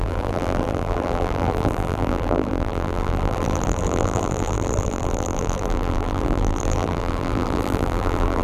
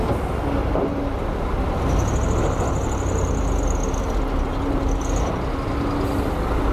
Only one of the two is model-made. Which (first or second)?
first